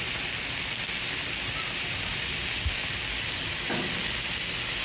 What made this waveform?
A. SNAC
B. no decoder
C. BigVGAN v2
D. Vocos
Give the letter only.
B